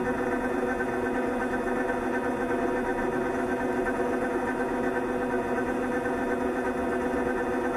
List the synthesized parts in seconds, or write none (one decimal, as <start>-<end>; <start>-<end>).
none